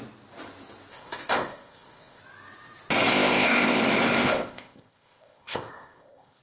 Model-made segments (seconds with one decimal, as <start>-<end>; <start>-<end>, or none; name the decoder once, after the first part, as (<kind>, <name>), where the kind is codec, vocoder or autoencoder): 0.9-2.2 (codec, ZipCodec); 3.1-3.8; 4.2-6.4